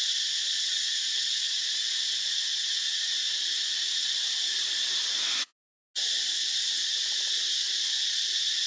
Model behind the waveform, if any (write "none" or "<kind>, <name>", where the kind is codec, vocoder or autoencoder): none